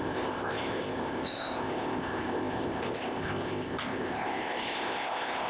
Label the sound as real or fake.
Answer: fake